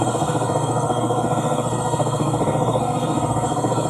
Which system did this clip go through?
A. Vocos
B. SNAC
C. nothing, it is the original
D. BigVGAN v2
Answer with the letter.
B